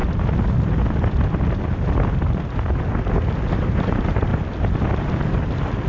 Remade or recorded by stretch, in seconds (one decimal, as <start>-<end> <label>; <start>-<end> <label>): 0.0-3.5 recorded; 3.5-4.3 remade; 4.3-5.9 recorded